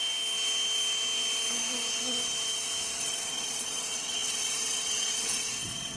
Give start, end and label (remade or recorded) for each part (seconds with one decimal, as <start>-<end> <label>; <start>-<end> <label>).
0.0-3.0 recorded; 3.0-6.0 remade